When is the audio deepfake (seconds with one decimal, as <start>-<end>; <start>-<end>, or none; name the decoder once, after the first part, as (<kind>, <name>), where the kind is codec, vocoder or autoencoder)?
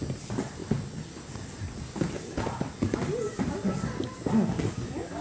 none